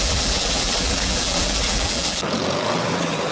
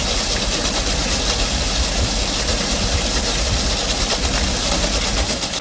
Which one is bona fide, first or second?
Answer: second